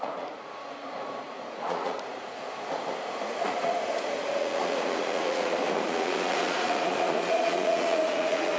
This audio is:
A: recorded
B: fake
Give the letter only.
B